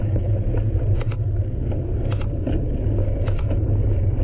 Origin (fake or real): real